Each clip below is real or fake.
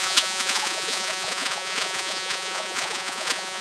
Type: fake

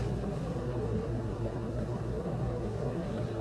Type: fake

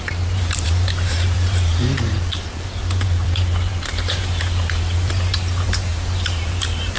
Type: fake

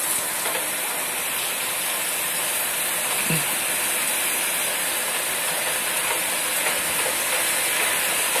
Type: real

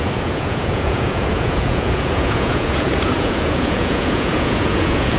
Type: fake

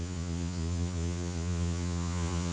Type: fake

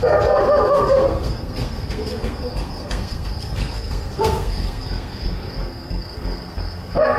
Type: fake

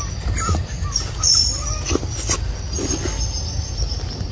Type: real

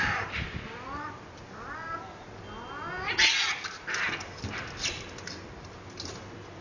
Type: real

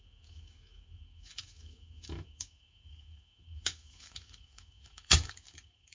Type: fake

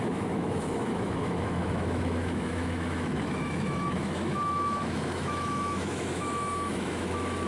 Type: fake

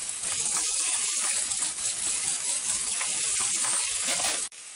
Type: fake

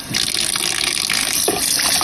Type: real